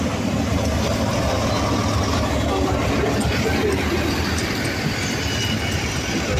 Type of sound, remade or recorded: recorded